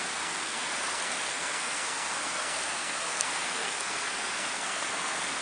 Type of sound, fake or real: fake